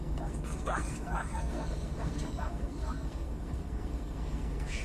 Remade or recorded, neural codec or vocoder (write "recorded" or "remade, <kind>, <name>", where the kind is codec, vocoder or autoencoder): remade, codec, SNAC